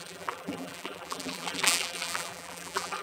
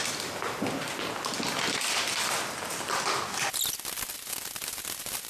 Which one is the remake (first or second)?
first